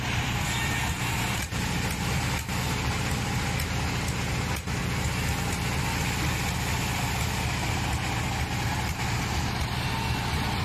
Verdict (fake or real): real